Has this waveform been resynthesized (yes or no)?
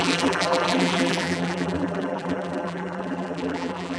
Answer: yes